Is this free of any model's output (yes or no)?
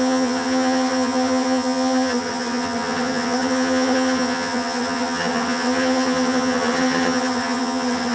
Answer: no